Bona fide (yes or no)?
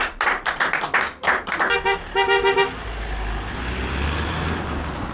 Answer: yes